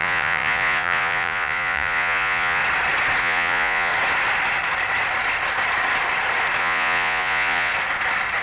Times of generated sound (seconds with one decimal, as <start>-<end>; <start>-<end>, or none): 0.0-2.6; 3.2-3.9; 6.6-7.7